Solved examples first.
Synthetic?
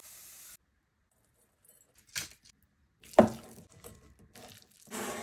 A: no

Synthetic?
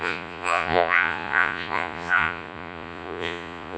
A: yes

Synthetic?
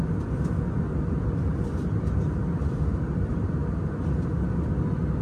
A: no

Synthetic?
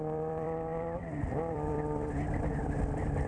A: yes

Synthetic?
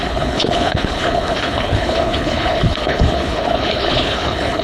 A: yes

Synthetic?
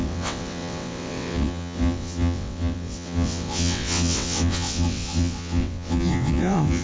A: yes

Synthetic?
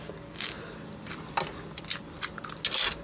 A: no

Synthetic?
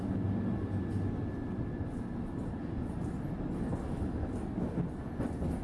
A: no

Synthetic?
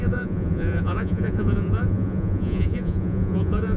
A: yes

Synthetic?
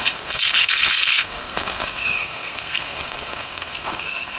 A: yes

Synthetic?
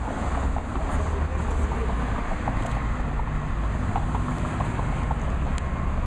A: no